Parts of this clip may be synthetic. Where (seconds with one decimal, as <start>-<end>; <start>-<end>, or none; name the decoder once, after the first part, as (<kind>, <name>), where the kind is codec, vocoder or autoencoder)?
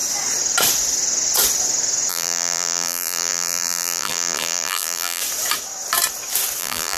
2.1-5.2 (vocoder, BigVGAN v2); 6.6-7.0